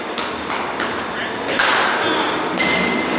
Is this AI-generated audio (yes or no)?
no